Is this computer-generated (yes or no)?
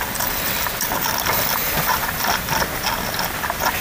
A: no